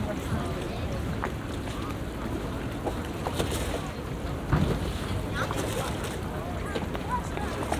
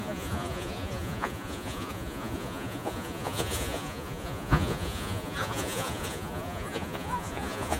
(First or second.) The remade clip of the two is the second